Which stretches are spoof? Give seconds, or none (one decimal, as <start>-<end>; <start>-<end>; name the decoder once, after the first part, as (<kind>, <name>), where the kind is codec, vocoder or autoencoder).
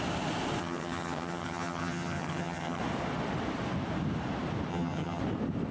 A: 0.6-2.8 (vocoder, HiFi-GAN); 4.7-5.2